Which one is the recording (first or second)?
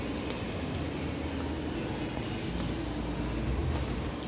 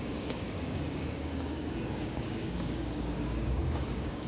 first